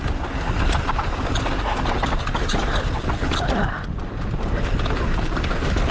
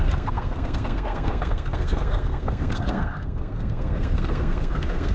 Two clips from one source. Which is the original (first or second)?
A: first